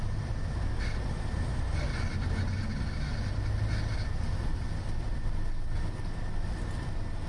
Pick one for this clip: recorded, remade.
recorded